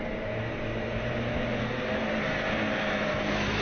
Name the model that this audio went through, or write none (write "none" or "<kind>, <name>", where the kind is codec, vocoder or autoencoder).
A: vocoder, BigVGAN v2